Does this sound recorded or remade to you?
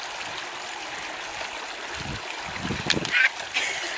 recorded